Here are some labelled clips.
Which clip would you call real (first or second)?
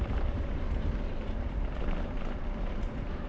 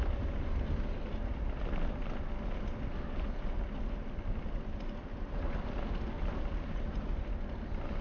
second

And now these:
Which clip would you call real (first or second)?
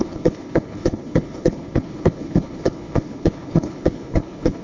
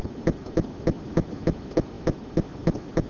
second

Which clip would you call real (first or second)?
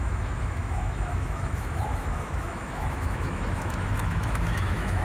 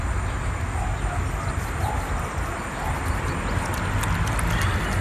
second